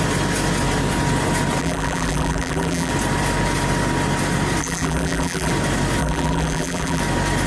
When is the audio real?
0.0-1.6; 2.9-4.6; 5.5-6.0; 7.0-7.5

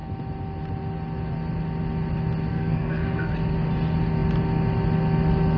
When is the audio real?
0.0-2.5; 3.3-5.6

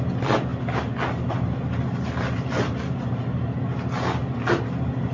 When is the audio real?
0.0-5.1

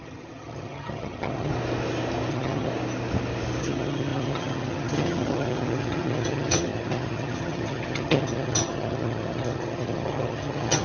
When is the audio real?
1.5-2.3; 2.7-3.6

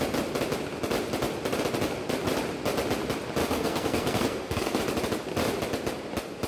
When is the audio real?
0.0-3.4; 4.8-6.5

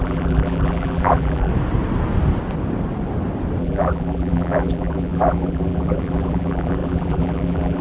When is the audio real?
1.5-3.6

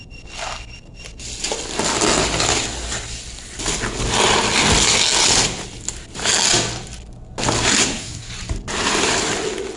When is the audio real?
0.0-7.8; 8.3-9.8